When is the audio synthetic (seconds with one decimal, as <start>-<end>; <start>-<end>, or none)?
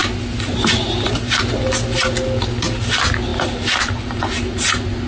none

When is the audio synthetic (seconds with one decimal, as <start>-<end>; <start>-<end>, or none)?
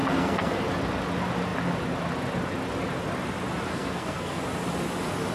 0.0-0.6; 3.7-4.4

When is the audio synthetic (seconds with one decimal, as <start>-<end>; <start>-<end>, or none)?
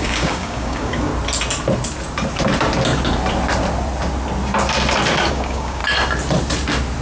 0.0-1.1; 5.3-5.8